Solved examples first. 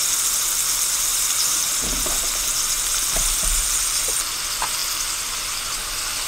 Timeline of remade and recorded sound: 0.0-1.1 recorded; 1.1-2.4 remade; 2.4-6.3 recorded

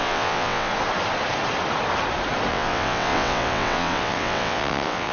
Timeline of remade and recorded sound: 0.0-0.7 remade; 0.7-2.5 recorded; 2.5-5.1 remade

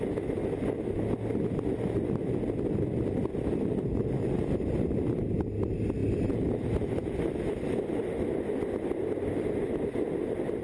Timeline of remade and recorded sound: 0.0-6.0 recorded; 6.0-7.5 remade; 7.5-10.6 recorded

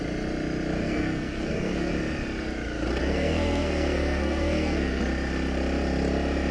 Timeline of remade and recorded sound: 0.0-0.8 recorded; 0.8-1.9 remade; 1.9-3.0 recorded; 3.0-5.0 remade; 5.0-6.5 recorded

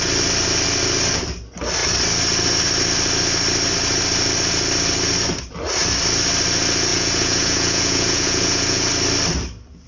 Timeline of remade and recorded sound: 0.0-6.9 recorded; 6.9-8.9 remade; 8.9-9.9 recorded

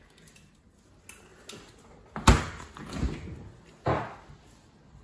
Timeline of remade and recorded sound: 0.0-5.0 recorded

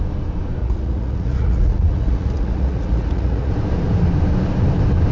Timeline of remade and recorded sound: 0.0-0.6 recorded; 0.6-3.5 remade; 3.5-5.1 recorded

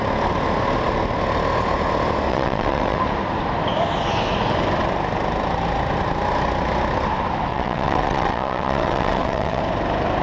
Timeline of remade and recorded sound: 0.0-2.3 recorded; 2.3-3.0 remade; 3.0-7.5 recorded; 7.5-9.6 remade; 9.6-10.2 recorded